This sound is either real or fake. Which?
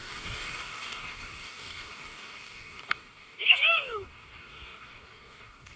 fake